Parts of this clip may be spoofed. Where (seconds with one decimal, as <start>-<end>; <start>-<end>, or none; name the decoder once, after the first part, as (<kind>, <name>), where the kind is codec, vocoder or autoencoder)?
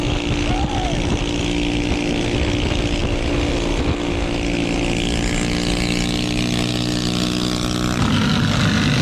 none